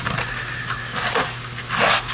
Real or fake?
real